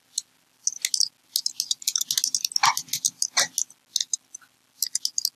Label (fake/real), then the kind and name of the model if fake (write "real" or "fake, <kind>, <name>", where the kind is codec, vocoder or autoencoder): real